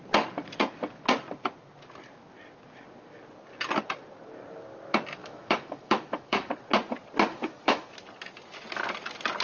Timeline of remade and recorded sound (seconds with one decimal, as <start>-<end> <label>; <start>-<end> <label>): 0.0-5.2 recorded; 5.2-6.5 remade; 6.5-7.3 recorded; 7.3-7.9 remade; 7.9-9.4 recorded